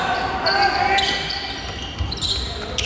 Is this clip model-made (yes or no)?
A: no